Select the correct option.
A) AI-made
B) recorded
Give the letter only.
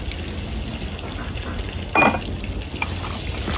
B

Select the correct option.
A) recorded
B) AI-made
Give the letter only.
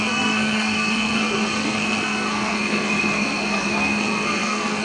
B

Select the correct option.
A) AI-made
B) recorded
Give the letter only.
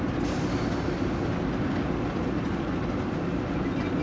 B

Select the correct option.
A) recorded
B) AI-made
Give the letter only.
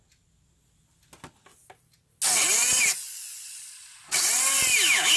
A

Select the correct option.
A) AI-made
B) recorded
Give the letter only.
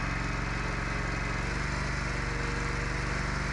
B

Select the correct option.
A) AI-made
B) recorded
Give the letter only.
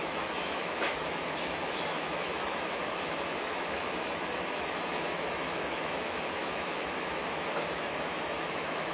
A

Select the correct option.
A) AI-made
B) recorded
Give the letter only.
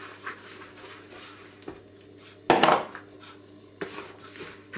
B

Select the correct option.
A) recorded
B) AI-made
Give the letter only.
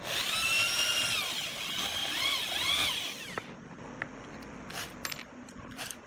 A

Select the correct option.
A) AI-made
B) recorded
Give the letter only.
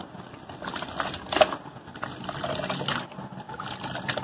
B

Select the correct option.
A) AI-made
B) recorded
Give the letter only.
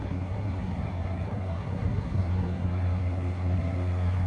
A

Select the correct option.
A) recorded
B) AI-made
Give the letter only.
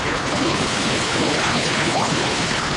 B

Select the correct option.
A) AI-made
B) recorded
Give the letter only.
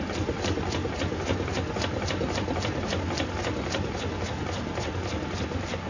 B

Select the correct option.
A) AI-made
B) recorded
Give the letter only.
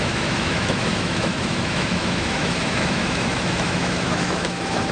A